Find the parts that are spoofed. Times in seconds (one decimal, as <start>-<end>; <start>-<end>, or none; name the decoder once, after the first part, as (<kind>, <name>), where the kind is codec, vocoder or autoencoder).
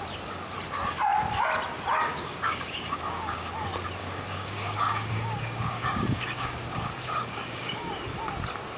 2.0-3.5 (codec, DAC); 4.0-7.9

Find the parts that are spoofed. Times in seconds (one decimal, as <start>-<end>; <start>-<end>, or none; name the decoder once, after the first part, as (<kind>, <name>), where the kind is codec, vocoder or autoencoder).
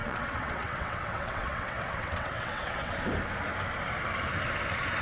0.0-2.9 (vocoder, WaveNeXt)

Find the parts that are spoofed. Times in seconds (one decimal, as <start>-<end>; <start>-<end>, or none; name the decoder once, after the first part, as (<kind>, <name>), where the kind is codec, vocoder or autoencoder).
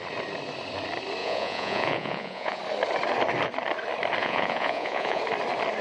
1.2-2.6 (vocoder, Vocos); 4.2-5.2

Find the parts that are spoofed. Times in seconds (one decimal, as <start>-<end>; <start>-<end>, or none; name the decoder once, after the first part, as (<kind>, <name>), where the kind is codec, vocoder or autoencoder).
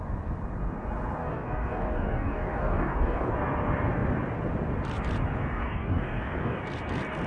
1.2-3.3 (codec, DAC); 5.6-6.6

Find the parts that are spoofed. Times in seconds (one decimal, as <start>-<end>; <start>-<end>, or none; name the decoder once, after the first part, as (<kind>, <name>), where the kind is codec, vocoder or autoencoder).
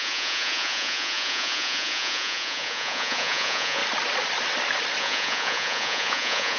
0.0-3.8 (vocoder, Vocos); 5.0-6.6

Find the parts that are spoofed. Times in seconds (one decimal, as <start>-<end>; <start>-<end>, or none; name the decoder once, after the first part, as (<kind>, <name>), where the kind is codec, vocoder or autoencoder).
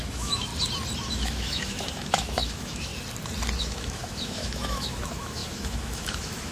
0.0-0.5 (autoencoder, DAC-VAE); 1.1-2.9; 3.6-6.5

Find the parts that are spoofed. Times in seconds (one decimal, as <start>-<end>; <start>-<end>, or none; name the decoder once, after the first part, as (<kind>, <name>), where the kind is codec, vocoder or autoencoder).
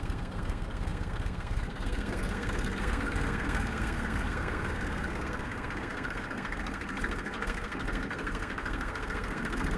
0.0-9.8 (codec, SNAC)